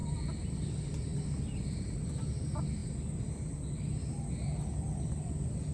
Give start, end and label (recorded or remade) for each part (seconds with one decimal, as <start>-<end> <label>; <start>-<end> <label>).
0.0-5.7 recorded